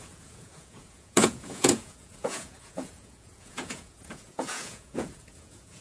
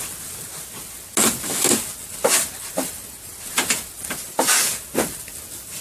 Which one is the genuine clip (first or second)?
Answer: second